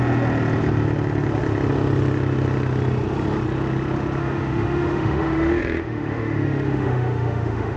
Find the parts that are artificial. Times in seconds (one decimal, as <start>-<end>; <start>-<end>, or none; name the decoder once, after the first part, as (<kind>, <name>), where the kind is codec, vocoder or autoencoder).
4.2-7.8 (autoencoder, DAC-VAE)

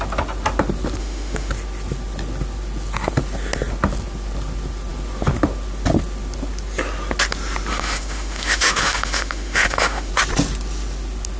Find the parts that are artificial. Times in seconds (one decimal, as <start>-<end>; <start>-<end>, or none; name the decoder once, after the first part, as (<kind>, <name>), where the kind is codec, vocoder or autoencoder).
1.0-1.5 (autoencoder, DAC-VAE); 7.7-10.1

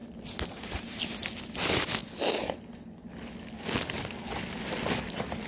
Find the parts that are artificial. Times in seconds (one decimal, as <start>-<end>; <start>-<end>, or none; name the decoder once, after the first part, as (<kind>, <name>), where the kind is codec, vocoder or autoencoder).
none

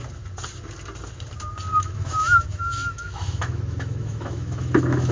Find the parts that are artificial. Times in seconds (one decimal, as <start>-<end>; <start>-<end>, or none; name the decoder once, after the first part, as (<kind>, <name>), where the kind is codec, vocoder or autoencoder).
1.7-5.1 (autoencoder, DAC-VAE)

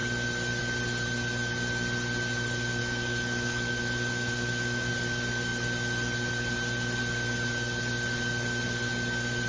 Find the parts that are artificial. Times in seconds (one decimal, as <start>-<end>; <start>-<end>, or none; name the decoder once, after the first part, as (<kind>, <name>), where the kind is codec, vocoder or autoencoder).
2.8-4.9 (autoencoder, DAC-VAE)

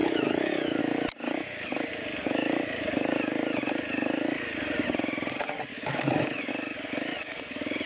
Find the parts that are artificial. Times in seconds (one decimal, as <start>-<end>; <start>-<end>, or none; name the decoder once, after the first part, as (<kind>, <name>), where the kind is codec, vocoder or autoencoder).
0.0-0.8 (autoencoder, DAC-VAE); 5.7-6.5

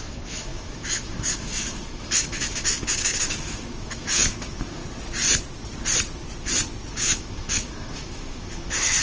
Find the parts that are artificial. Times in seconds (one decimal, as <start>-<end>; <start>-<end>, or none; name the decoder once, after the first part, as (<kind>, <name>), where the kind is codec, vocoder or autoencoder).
0.0-4.8 (autoencoder, DAC-VAE); 6.9-9.0